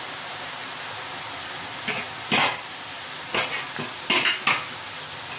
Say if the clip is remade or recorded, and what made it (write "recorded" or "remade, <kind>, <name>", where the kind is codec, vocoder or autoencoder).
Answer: recorded